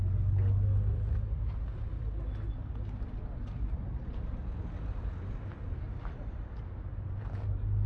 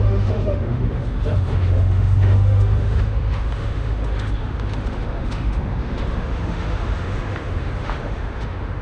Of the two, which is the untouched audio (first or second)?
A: first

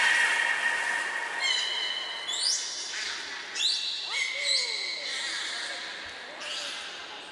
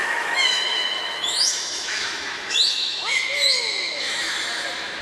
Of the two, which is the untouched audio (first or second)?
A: first